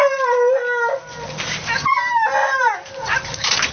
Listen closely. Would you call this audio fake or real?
real